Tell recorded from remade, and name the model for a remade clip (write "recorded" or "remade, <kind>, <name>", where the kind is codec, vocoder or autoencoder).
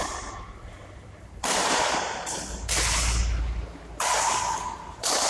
recorded